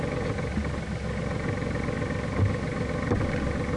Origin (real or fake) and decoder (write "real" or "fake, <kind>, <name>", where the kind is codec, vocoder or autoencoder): real